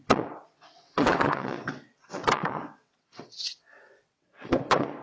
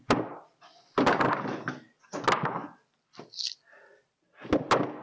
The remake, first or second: first